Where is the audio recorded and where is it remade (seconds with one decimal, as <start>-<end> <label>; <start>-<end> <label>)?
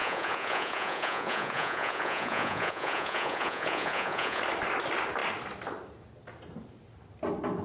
0.0-4.4 remade; 4.4-7.6 recorded